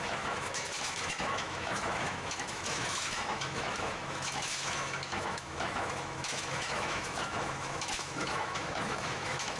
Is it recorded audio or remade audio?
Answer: remade